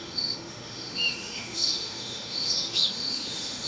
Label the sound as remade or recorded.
remade